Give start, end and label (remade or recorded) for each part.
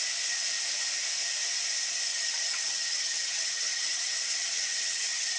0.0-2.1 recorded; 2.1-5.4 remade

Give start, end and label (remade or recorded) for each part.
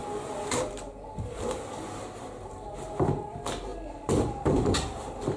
0.0-2.5 recorded; 2.5-5.4 remade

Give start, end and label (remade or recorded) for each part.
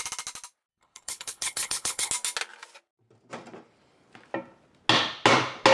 0.0-0.7 recorded; 0.7-2.1 remade; 2.1-5.7 recorded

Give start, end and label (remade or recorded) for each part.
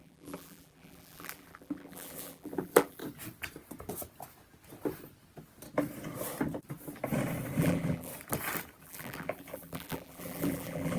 0.0-3.0 remade; 3.0-7.6 recorded; 7.6-8.1 remade; 8.1-8.8 recorded; 8.8-11.0 remade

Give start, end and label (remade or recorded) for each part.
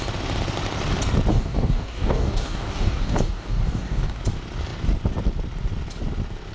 0.0-1.3 recorded; 1.3-4.2 remade; 4.2-6.5 recorded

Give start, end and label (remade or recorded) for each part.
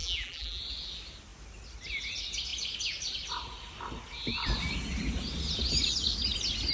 0.0-0.6 remade; 0.6-6.7 recorded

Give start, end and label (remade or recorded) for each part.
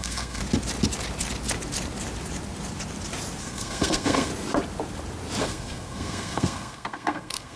0.0-0.4 remade; 0.4-3.4 recorded; 3.4-4.3 remade; 4.3-5.4 recorded; 5.4-7.6 remade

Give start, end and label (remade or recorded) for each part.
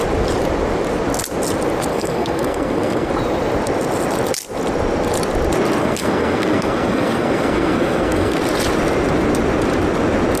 0.0-1.9 recorded; 1.9-3.1 remade; 3.1-5.8 recorded; 5.8-8.4 remade; 8.4-10.4 recorded